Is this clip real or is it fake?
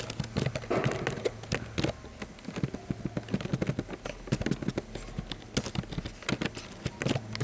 real